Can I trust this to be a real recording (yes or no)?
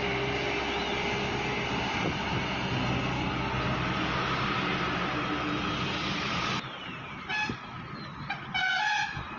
yes